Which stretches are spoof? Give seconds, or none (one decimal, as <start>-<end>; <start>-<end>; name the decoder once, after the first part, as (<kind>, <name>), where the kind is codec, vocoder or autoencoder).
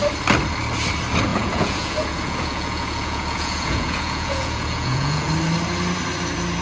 1.3-5.3 (vocoder, Vocos)